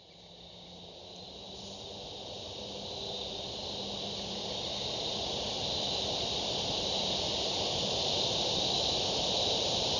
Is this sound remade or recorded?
recorded